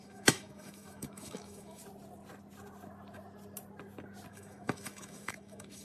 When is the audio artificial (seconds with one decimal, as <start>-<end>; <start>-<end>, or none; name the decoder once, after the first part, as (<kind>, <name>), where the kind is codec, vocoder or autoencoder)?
0.0-1.8 (autoencoder, DAC-VAE); 4.3-5.8

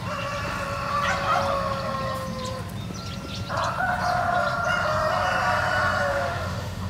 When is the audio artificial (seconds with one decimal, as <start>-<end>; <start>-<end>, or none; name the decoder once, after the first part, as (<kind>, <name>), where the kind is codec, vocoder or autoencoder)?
6.1-6.9 (autoencoder, DAC-VAE)